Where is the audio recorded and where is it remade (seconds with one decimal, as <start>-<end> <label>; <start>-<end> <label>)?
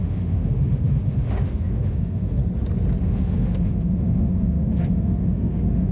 0.0-2.4 remade; 2.4-3.0 recorded; 3.0-5.9 remade